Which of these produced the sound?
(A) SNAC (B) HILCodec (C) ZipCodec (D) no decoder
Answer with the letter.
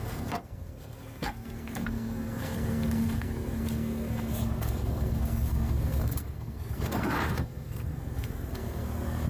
A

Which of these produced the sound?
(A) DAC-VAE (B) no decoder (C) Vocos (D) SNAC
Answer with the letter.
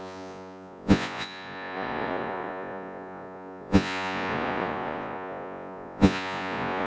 C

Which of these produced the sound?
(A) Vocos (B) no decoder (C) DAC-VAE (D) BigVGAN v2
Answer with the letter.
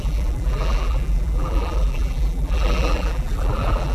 D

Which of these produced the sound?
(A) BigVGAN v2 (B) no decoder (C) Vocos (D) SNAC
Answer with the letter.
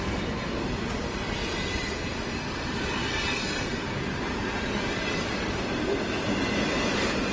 A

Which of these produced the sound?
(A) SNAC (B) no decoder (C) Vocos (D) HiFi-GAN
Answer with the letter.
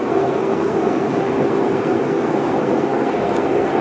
A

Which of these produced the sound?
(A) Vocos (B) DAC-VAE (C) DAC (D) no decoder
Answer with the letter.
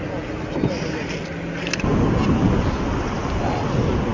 D